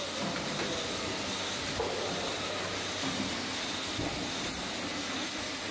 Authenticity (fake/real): real